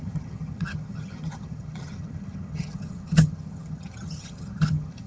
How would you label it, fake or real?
fake